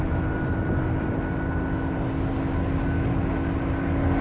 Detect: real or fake real